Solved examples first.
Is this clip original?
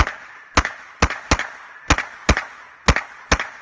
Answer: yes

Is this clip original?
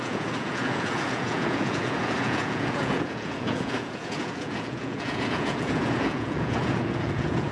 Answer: no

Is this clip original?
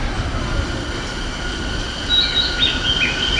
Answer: yes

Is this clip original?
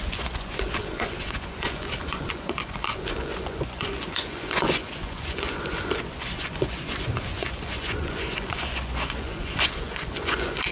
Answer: no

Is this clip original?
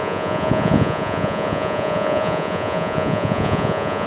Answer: no